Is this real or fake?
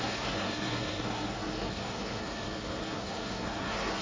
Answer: fake